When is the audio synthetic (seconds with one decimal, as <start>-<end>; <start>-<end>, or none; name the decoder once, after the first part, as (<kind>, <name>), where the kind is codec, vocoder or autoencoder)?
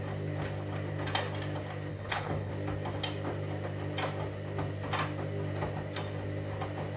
1.9-2.5 (codec, HILCodec)